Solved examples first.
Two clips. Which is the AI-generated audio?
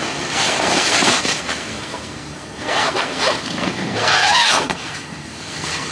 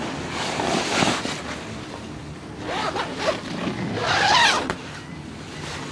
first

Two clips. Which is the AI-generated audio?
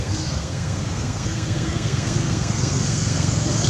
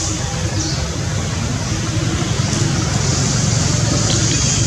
first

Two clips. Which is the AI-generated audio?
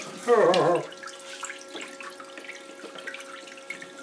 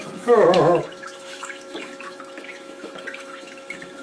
second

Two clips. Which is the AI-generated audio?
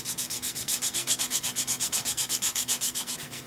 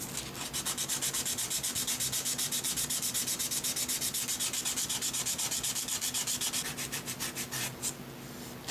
first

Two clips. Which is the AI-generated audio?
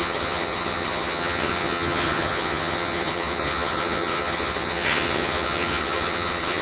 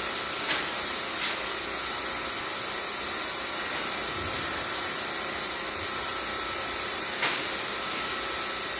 first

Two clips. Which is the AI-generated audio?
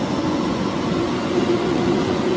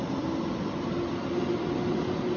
first